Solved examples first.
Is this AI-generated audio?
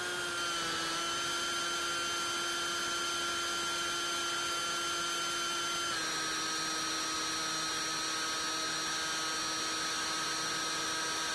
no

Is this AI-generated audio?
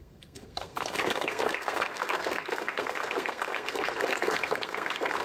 yes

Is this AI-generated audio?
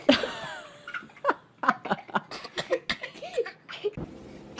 no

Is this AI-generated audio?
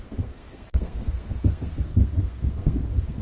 yes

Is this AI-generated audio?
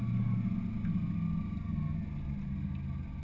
no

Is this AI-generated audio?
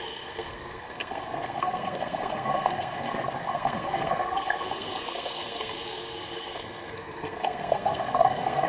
yes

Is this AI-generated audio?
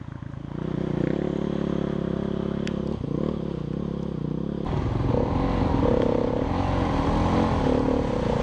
no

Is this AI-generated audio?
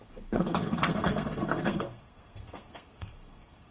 yes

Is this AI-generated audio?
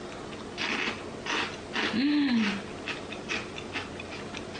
no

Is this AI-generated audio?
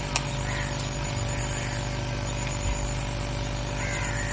no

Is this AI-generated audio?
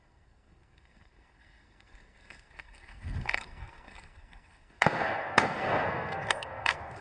yes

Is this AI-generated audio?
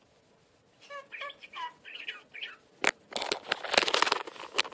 no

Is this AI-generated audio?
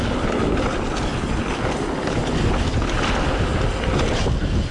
no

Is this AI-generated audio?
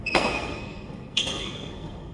yes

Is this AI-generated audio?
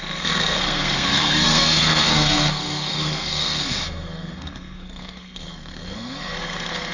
yes